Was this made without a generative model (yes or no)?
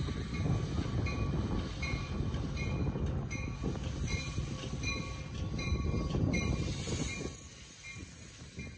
yes